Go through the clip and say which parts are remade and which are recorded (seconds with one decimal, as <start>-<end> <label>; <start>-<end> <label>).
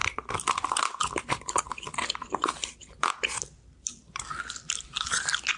0.0-2.5 remade; 2.5-5.6 recorded